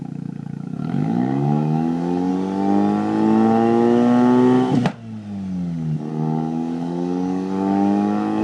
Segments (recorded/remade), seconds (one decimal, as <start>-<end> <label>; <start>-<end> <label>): 0.0-2.3 remade; 2.3-6.1 recorded; 6.1-8.4 remade